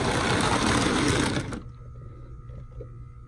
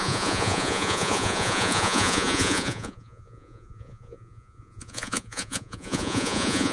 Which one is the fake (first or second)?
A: second